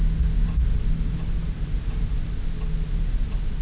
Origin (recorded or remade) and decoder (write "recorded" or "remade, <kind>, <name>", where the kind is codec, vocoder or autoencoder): recorded